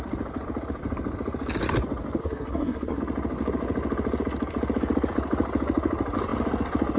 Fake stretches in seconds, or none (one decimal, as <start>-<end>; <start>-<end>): 2.2-3.0